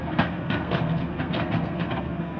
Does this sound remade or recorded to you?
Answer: remade